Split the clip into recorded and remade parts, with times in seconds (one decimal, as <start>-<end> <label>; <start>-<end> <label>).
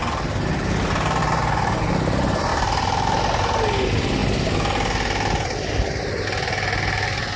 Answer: 0.0-1.2 recorded; 1.2-1.8 remade; 1.8-2.5 recorded; 2.5-3.2 remade; 3.2-7.4 recorded